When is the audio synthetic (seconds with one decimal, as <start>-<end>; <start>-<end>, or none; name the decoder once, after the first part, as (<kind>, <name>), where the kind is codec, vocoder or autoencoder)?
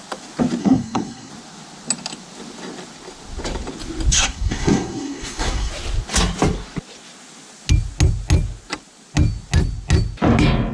0.6-1.3 (codec, SNAC); 4.1-5.7